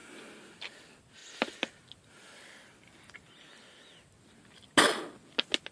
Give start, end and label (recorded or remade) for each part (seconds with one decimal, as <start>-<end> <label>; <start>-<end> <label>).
0.0-5.7 recorded